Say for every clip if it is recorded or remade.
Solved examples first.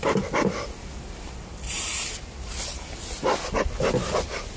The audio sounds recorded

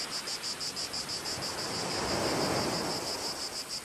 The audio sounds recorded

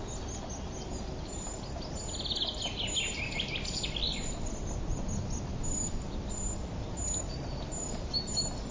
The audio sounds recorded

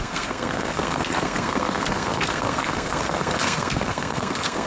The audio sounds remade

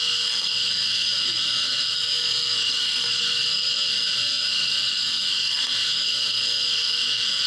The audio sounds remade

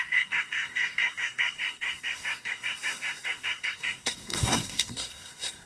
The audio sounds remade